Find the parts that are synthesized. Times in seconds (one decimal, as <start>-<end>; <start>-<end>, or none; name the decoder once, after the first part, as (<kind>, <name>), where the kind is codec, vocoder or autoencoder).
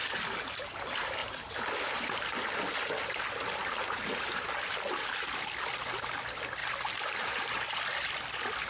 0.6-1.2 (vocoder, BigVGAN v2); 4.2-6.6; 7.1-8.7